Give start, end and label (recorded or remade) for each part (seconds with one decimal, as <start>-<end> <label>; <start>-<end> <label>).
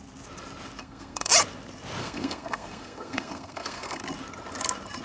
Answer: 0.0-0.8 recorded; 0.8-1.3 remade; 1.3-2.0 recorded; 2.0-4.0 remade; 4.0-5.0 recorded